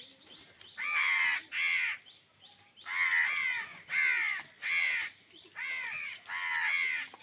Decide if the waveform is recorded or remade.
recorded